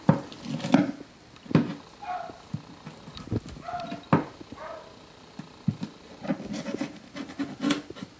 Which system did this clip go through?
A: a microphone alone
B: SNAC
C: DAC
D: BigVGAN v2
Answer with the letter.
A